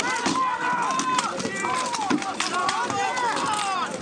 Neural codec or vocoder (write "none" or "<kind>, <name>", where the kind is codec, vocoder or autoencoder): none